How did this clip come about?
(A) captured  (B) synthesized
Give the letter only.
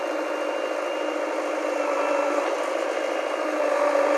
A